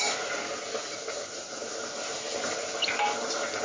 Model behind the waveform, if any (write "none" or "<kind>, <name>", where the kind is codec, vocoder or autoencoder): none